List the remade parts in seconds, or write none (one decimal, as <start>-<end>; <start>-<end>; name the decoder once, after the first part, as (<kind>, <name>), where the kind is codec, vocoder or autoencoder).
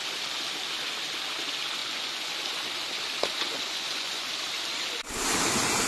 1.8-2.3 (vocoder, Vocos); 3.5-4.3